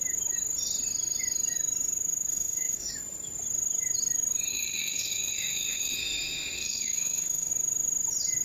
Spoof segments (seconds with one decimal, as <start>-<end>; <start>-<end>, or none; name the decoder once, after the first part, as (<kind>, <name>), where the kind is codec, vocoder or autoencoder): 2.3-2.9 (autoencoder, DAC-VAE); 4.5-7.5